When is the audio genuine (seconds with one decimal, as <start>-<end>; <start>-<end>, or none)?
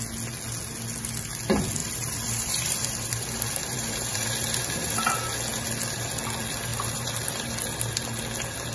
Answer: 0.0-1.8; 5.0-6.7; 7.5-8.7